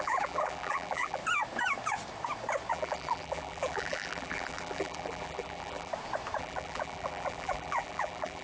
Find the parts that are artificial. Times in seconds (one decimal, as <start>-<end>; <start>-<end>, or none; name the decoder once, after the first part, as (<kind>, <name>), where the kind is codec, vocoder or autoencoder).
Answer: 0.0-1.2 (vocoder, BigVGAN v2); 2.7-5.9; 6.4-8.4